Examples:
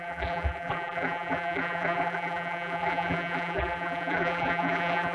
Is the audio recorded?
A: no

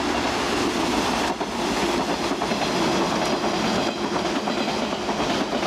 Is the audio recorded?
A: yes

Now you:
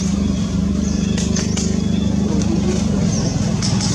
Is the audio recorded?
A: yes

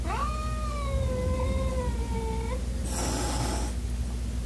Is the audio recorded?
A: yes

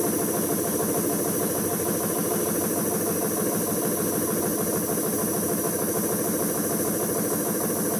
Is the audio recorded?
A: yes